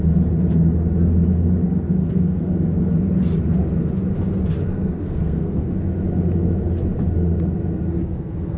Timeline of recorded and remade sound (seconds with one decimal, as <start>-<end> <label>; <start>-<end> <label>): 0.0-2.0 recorded; 2.0-2.5 remade; 2.5-4.6 recorded; 4.6-5.7 remade; 5.7-8.0 recorded; 8.0-8.6 remade

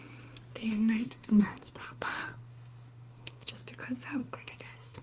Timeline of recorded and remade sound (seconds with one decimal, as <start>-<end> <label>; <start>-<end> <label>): 0.0-0.5 recorded; 0.5-3.5 remade; 3.5-4.2 recorded; 4.2-5.0 remade

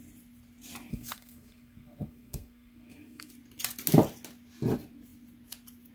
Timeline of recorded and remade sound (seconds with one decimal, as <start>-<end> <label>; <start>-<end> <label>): 0.0-0.9 recorded; 0.9-3.3 remade; 3.3-5.9 recorded

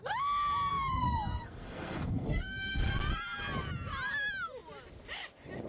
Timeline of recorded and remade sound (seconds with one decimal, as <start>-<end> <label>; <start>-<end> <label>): 0.0-0.7 recorded; 0.7-2.8 remade; 2.8-5.7 recorded

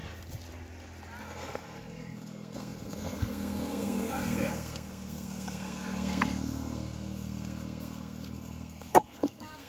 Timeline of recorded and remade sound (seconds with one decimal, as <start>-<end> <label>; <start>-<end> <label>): 0.0-1.2 recorded; 1.2-9.7 remade

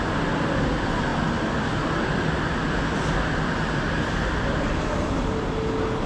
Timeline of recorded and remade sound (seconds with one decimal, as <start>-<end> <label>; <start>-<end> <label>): 0.0-6.1 recorded

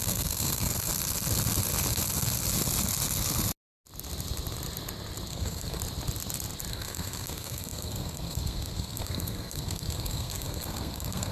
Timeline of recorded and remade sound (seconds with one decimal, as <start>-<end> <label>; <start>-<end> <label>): 0.0-0.9 remade; 0.9-5.3 recorded; 5.3-5.8 remade; 5.8-6.7 recorded; 6.7-11.3 remade

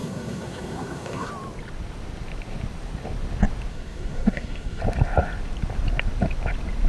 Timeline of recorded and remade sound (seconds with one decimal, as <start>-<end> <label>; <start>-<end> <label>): 0.0-1.3 remade; 1.3-3.7 recorded; 3.7-4.8 remade; 4.8-6.9 recorded